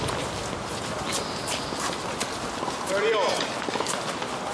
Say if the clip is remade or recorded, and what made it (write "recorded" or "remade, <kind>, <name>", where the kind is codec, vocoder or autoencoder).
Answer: recorded